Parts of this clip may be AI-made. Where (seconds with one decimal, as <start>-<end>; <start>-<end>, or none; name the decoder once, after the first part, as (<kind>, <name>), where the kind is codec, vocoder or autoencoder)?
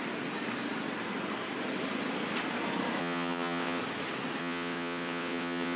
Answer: 3.0-3.8 (vocoder, WaveNeXt); 4.4-5.8